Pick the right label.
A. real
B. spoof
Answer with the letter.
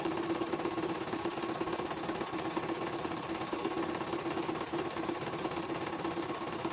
B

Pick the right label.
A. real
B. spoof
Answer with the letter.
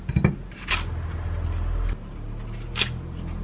A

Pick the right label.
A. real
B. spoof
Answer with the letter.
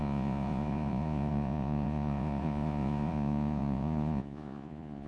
B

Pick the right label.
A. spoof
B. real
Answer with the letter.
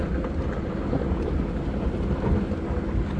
B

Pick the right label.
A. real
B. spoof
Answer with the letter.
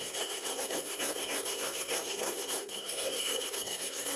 B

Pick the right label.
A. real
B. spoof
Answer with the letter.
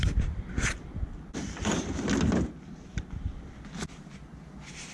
A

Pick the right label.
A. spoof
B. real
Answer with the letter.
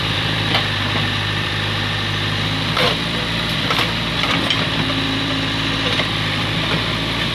A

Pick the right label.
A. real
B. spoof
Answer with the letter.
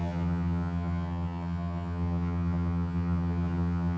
B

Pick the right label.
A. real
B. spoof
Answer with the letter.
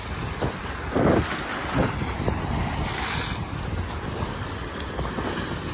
A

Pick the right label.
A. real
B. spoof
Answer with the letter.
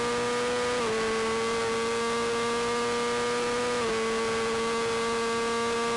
A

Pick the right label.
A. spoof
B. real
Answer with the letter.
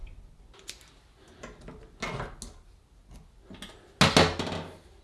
B